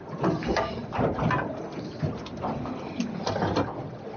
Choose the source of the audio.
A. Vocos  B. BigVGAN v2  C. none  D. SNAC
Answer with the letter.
B